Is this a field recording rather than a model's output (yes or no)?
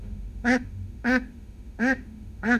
no